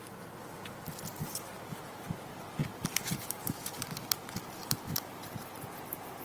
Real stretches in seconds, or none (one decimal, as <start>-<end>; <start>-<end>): 0.0-1.1; 2.0-2.6; 3.8-4.6; 5.3-6.2

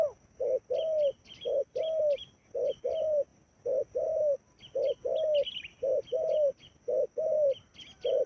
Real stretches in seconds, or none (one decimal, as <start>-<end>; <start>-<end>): 0.0-8.3

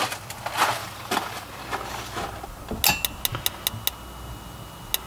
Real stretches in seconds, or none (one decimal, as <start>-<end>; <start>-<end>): 0.0-0.8; 1.5-5.1